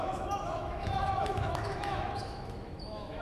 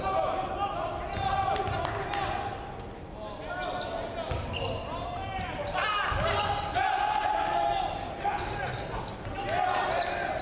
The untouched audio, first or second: second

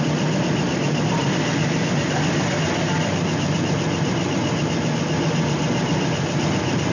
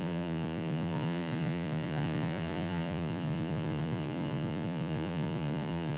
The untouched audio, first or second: first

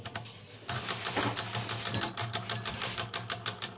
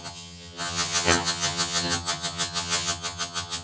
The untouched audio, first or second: first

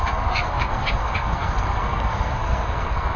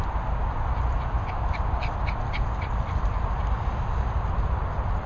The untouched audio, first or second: second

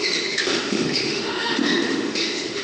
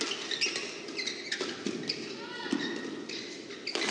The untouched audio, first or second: second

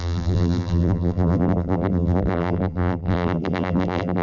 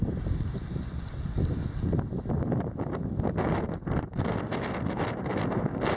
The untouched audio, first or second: second